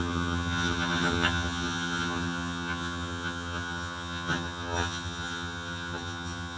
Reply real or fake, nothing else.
fake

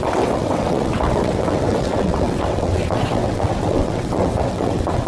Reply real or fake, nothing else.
fake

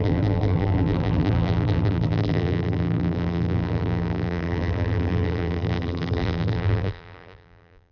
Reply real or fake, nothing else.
fake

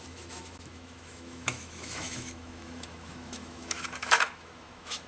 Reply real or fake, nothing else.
fake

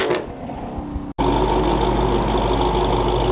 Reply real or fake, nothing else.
real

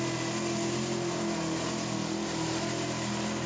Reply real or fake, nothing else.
real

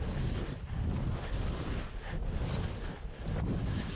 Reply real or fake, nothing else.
real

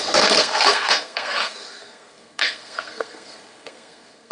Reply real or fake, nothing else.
fake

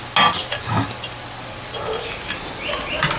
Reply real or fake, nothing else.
real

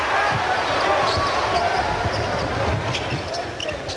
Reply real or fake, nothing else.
real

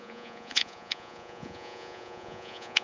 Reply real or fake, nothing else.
fake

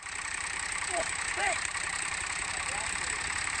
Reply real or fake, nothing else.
fake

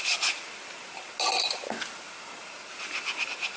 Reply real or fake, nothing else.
real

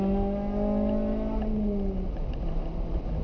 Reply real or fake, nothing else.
real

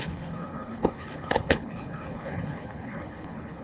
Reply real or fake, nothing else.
fake